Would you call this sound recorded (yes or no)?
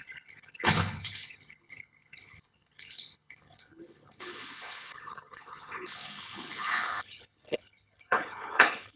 no